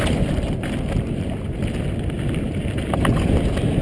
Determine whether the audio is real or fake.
real